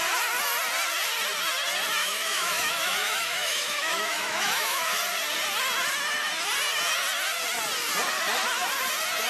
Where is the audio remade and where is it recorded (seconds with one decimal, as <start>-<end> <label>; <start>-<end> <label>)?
0.0-2.0 recorded; 2.0-5.0 remade; 5.0-9.3 recorded